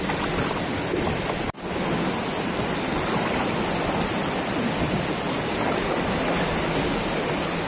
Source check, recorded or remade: recorded